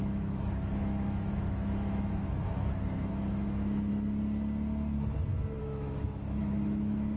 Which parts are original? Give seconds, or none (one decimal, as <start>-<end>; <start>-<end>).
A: 3.9-5.6